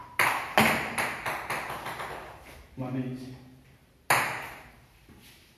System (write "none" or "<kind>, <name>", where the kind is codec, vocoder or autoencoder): none